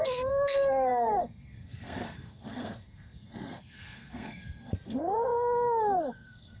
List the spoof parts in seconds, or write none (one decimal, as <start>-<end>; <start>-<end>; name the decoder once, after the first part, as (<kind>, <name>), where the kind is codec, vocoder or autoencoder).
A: 0.0-6.6 (codec, SNAC)